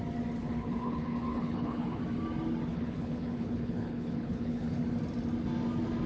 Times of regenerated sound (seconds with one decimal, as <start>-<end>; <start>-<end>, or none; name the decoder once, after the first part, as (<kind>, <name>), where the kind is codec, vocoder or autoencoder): 0.4-2.0 (codec, HILCodec); 2.7-4.8